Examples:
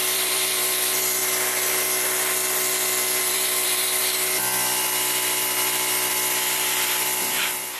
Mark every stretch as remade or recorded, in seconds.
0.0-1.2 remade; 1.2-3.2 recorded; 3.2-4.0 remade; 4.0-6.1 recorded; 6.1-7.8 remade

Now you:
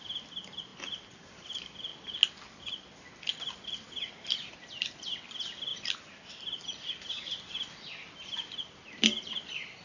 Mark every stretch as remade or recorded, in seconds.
0.0-1.9 remade; 1.9-4.5 recorded; 4.5-9.8 remade

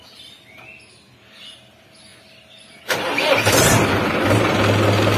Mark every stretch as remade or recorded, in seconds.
0.0-5.2 recorded

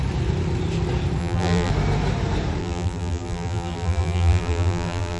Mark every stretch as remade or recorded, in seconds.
0.0-1.2 recorded; 1.2-1.7 remade; 1.7-2.6 recorded; 2.6-5.2 remade